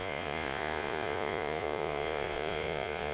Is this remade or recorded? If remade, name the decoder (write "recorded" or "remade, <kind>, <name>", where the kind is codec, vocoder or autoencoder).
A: remade, vocoder, Vocos